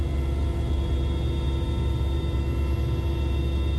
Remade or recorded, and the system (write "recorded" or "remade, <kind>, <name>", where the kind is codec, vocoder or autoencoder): recorded